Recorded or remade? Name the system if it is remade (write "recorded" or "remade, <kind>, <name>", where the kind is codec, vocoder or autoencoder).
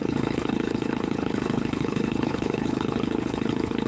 remade, codec, HILCodec